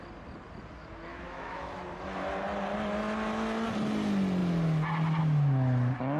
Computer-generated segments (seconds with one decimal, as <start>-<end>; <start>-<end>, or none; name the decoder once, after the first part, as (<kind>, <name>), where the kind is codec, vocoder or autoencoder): 1.1-1.7 (autoencoder, DAC-VAE)